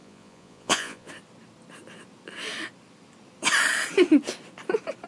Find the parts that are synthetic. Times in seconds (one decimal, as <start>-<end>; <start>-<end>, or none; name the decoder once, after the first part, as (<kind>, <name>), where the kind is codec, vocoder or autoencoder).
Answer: 0.0-1.1 (vocoder, Vocos)